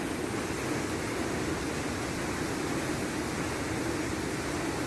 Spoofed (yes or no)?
no